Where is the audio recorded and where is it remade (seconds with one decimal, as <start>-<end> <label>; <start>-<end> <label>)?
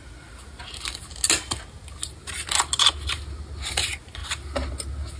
0.0-5.2 recorded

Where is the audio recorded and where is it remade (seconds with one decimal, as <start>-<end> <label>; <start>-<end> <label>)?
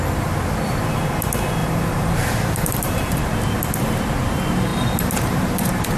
0.0-1.6 recorded; 1.6-3.2 remade; 3.2-4.7 recorded; 4.7-6.0 remade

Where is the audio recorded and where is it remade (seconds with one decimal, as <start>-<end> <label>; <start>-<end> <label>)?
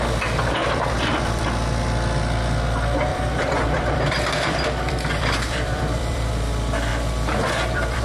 0.0-0.6 recorded; 0.6-1.4 remade; 1.4-3.1 recorded; 3.1-6.3 remade; 6.3-6.9 recorded; 6.9-8.0 remade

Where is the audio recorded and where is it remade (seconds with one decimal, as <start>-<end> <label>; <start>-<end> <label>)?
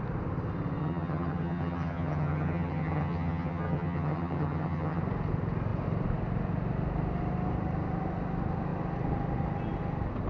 0.0-0.8 recorded; 0.8-5.0 remade; 5.0-10.3 recorded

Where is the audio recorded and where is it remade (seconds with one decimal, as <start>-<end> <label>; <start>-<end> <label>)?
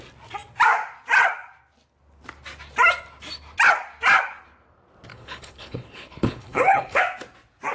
0.0-5.1 recorded; 5.1-7.0 remade; 7.0-7.7 recorded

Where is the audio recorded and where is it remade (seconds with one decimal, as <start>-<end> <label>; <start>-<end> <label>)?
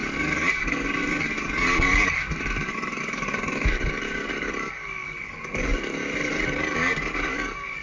0.0-7.8 remade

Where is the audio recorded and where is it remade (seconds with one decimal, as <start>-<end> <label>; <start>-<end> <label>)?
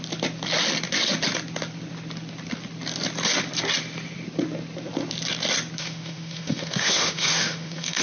0.0-5.8 recorded; 5.8-8.0 remade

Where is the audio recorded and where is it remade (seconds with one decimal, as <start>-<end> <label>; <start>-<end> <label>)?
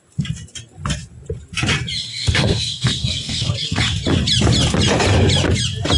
0.0-2.1 recorded; 2.1-3.8 remade; 3.8-6.0 recorded